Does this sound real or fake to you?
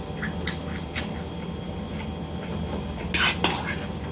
real